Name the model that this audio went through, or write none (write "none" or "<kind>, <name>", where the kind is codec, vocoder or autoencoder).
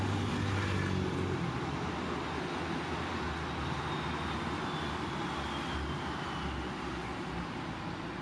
none